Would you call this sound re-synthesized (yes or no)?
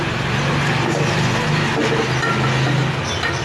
no